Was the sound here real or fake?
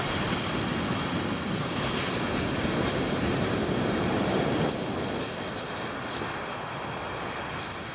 real